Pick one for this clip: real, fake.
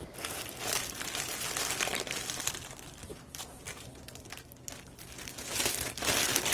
fake